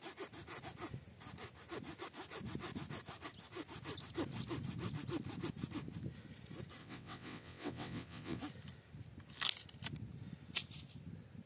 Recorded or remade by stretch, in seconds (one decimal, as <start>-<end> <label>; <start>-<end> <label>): 0.0-6.8 recorded; 6.8-8.4 remade; 8.4-11.5 recorded